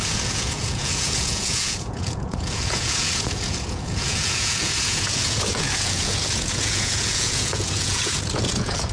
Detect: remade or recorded remade